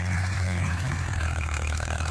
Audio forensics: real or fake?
fake